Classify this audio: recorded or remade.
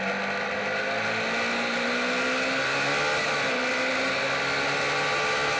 recorded